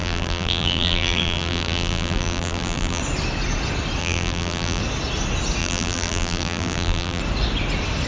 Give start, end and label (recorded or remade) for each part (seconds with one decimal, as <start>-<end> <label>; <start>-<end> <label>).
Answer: 0.0-3.0 remade; 3.0-4.0 recorded; 4.0-4.8 remade; 4.8-5.6 recorded; 5.6-7.2 remade; 7.2-8.1 recorded